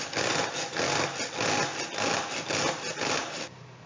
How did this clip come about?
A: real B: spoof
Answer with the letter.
A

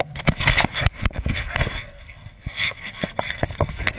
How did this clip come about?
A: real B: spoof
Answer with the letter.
B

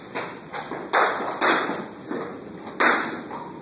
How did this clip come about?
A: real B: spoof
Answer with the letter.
A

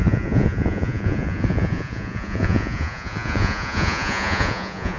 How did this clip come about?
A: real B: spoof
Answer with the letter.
B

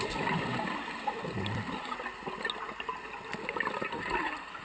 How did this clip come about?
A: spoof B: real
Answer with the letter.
B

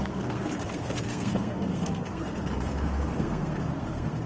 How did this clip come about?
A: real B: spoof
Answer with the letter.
B